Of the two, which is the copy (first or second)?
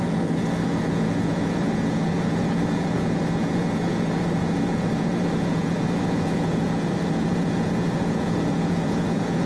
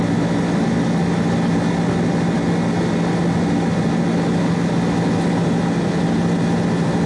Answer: first